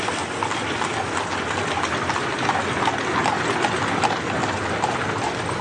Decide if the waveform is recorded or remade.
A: recorded